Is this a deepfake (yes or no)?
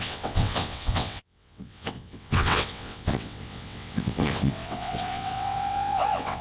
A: yes